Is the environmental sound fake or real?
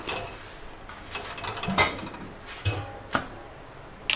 real